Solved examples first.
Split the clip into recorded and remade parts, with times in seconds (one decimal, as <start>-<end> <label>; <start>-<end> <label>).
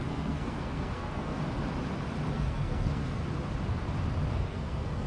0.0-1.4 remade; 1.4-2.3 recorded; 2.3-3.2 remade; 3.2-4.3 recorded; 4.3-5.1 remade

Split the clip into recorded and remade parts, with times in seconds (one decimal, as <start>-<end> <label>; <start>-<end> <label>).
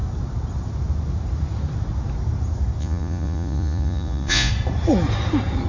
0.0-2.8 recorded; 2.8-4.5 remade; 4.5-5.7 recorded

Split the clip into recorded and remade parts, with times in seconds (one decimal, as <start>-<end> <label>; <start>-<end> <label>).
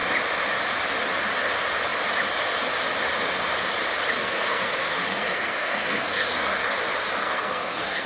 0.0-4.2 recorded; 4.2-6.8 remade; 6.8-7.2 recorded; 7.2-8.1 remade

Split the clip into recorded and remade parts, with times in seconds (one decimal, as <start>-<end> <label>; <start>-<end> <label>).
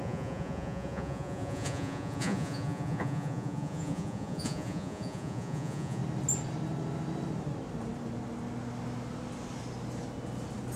0.0-6.0 remade; 6.0-10.8 recorded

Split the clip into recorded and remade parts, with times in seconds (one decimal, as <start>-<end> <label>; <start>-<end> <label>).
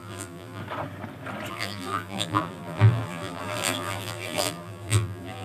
0.0-0.6 remade; 0.6-1.5 recorded; 1.5-5.4 remade